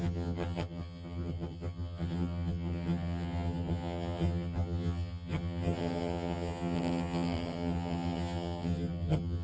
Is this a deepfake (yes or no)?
yes